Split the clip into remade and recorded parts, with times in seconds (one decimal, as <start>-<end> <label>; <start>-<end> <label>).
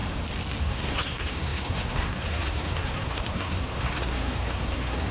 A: 0.0-0.6 recorded; 0.6-5.1 remade